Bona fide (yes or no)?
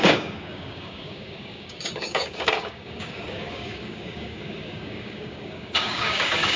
no